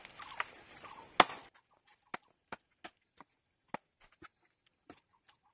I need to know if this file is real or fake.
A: real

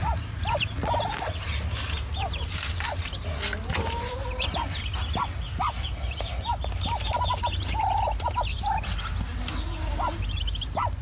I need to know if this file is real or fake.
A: real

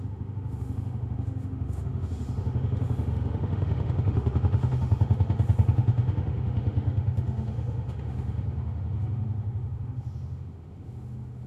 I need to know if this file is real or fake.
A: fake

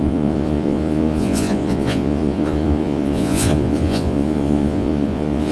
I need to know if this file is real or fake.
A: fake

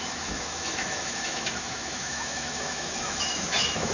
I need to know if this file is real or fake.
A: fake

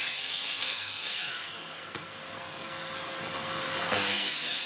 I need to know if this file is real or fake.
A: fake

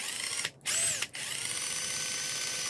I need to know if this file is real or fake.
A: real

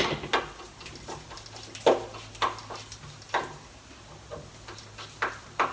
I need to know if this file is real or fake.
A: real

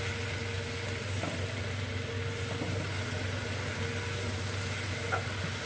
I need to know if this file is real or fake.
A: real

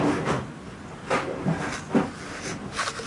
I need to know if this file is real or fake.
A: real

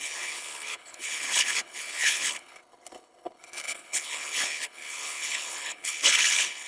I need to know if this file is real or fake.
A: fake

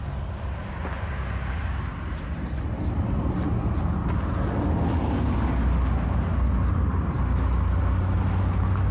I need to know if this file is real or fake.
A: real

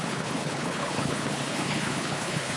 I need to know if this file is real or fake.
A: fake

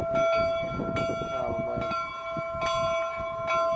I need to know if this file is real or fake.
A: real